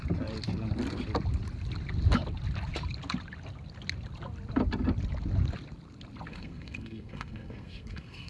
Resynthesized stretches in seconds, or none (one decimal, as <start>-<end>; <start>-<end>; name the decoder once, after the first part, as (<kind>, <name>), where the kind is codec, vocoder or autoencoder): 6.3-8.3 (codec, SNAC)